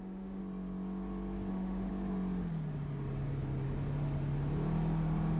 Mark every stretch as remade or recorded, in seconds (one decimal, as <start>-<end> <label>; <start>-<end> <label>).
0.0-0.4 remade; 0.4-1.5 recorded; 1.5-1.9 remade; 1.9-5.4 recorded